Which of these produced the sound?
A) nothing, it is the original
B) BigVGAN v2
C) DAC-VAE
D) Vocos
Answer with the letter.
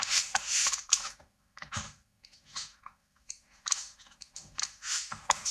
C